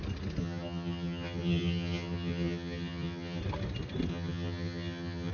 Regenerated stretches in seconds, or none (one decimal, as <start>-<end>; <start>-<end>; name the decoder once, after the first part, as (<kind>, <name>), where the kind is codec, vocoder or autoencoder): 0.4-3.4 (vocoder, HiFi-GAN); 4.1-5.3